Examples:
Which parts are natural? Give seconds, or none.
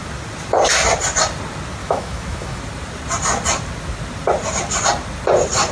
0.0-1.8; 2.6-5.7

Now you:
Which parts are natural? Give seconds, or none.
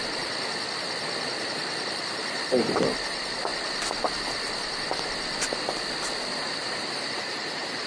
0.0-7.9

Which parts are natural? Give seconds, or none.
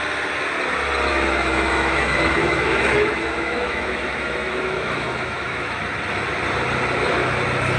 0.0-1.1; 5.8-7.8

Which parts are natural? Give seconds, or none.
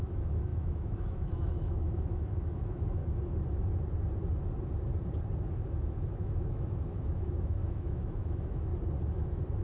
3.0-5.8; 8.7-9.6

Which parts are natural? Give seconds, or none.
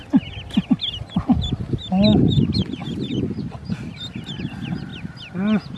0.0-5.8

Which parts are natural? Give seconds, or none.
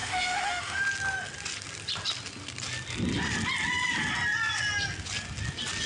0.8-5.9